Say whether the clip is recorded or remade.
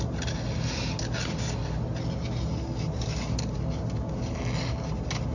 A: recorded